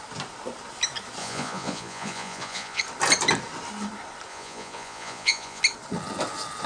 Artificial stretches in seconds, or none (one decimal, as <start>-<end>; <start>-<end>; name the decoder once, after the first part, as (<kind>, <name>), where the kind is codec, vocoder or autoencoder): 1.2-2.8 (vocoder, Vocos); 4.3-5.6